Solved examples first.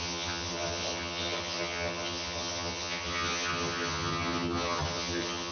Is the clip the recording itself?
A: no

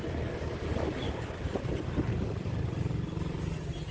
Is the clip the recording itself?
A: no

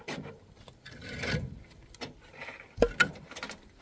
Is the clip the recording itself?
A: yes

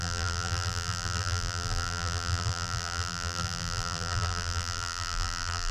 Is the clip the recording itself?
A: no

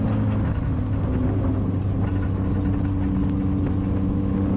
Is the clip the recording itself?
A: yes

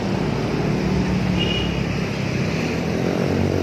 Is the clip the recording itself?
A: yes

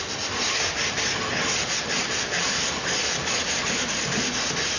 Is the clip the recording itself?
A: yes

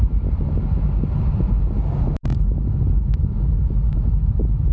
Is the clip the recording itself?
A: yes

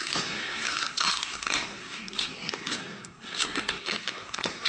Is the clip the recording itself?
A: no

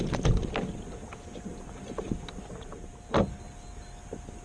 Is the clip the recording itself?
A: yes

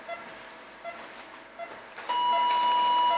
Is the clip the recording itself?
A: yes